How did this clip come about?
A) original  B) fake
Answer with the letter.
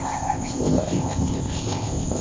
B